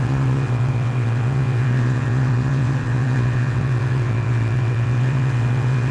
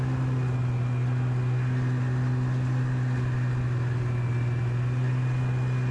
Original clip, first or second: second